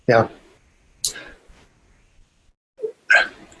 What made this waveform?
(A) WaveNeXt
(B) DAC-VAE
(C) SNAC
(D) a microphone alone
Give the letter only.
D